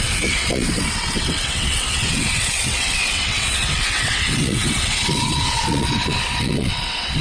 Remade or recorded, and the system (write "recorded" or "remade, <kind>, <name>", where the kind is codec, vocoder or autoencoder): remade, vocoder, WaveNeXt